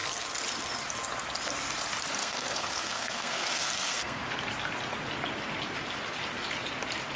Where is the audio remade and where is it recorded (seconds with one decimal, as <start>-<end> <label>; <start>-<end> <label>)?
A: 0.0-2.2 recorded; 2.2-4.2 remade; 4.2-7.2 recorded